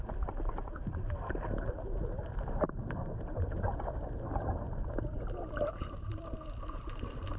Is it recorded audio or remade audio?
recorded